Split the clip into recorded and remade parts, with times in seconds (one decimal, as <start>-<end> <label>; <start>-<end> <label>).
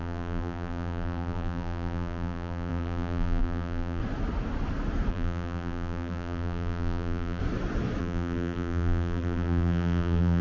0.0-4.0 remade; 4.0-5.1 recorded; 5.1-7.4 remade; 7.4-8.0 recorded; 8.0-10.4 remade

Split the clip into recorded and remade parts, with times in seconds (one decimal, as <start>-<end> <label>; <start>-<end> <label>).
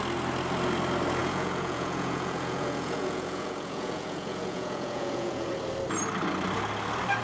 0.0-1.2 recorded; 1.2-5.5 remade; 5.5-7.2 recorded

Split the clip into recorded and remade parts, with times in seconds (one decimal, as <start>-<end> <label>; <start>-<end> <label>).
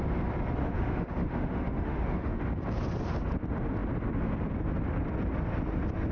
0.0-0.6 recorded; 0.6-2.4 remade; 2.4-6.1 recorded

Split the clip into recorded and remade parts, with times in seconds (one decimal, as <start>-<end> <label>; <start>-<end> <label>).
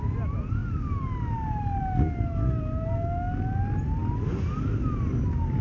0.0-5.6 recorded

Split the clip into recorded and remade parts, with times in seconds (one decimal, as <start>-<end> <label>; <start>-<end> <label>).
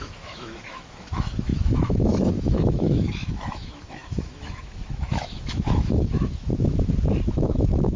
0.0-6.5 remade; 6.5-7.3 recorded; 7.3-8.0 remade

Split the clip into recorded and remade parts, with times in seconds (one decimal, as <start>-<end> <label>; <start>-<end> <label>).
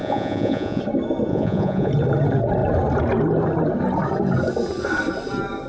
0.0-0.8 remade; 0.8-1.3 recorded; 1.3-1.9 remade; 1.9-5.7 recorded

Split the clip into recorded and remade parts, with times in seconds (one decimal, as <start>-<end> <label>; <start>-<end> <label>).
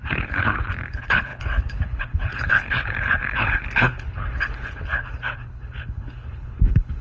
0.0-7.0 remade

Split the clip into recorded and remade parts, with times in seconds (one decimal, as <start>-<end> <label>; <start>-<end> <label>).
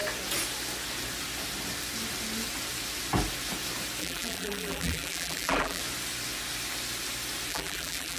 0.0-4.0 recorded; 4.0-5.8 remade; 5.8-7.5 recorded; 7.5-8.2 remade